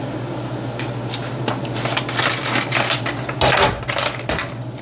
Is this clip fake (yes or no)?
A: no